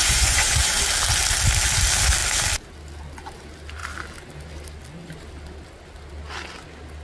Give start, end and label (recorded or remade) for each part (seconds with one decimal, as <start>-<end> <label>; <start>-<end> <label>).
0.0-0.8 remade; 0.8-7.0 recorded